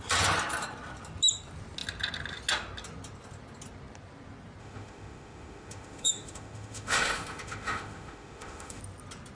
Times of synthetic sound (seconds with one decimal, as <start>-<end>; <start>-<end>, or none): 4.6-8.8